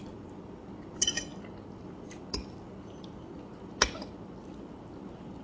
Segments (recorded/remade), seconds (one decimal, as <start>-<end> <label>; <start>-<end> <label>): 0.0-5.4 recorded